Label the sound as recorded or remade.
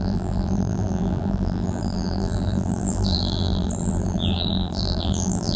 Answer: remade